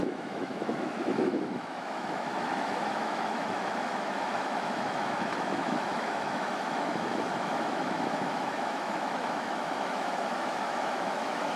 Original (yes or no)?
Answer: no